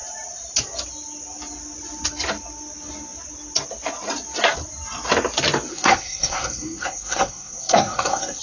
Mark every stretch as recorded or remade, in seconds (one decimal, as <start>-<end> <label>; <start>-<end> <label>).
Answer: 0.0-5.7 recorded; 5.7-8.4 remade